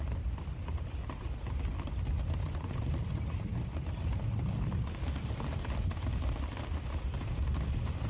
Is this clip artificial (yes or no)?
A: no